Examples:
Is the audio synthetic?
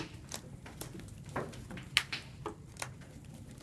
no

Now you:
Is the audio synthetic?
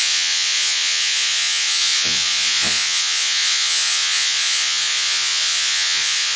yes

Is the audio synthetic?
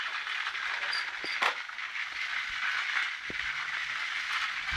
no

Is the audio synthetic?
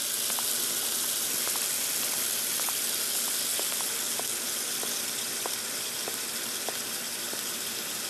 no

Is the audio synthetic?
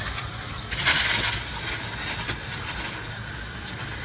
no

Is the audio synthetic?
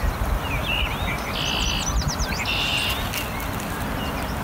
no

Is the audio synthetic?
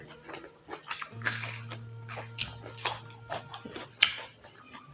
no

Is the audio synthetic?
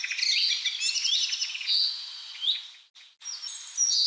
no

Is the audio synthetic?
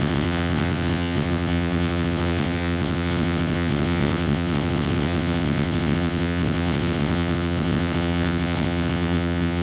yes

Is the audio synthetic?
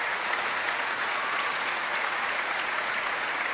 yes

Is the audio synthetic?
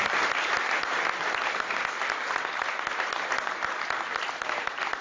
no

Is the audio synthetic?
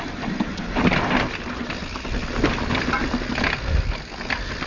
no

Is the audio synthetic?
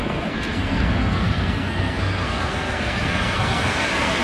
yes